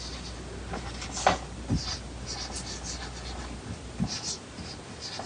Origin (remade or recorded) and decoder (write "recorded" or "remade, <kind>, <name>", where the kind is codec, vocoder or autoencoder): recorded